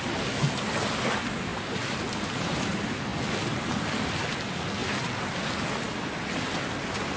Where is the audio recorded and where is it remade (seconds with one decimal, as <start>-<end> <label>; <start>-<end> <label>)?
0.0-7.2 recorded